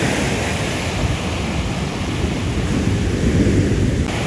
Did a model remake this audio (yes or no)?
yes